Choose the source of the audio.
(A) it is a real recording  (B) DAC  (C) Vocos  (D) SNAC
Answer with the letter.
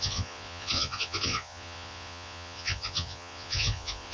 C